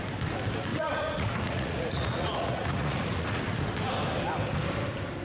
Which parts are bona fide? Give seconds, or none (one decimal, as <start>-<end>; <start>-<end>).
0.0-0.7; 3.4-5.2